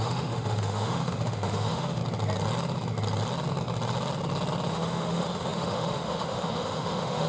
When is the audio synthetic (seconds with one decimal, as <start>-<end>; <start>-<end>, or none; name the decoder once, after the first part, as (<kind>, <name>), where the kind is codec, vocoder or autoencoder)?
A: 0.0-2.0 (autoencoder, DAC-VAE); 4.7-7.3